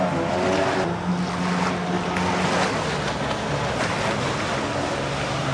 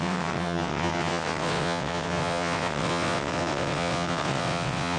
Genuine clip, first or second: first